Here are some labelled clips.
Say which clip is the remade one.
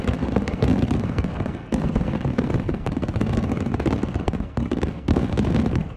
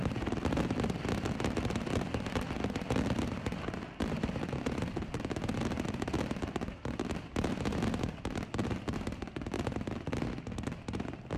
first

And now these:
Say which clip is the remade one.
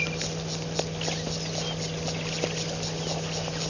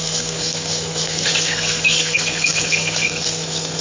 second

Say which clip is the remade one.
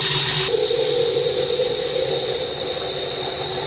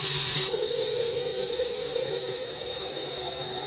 second